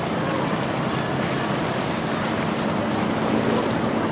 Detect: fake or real real